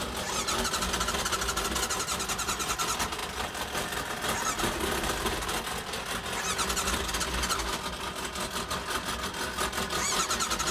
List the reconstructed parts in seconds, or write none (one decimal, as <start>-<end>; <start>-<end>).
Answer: 3.2-4.1